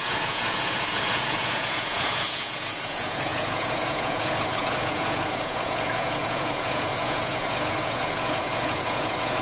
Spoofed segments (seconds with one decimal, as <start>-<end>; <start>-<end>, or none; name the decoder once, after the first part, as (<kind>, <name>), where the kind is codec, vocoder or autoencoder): 0.0-9.4 (vocoder, Vocos)